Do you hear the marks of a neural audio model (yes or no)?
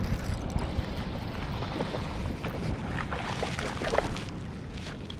no